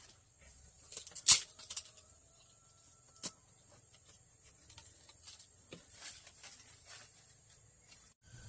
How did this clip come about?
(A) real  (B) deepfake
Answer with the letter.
A